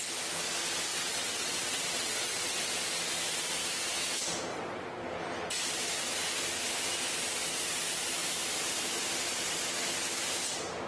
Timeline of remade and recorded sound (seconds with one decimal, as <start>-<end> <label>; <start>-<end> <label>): 0.0-0.9 recorded; 0.9-2.6 remade; 2.6-4.5 recorded; 4.5-5.0 remade; 5.0-10.9 recorded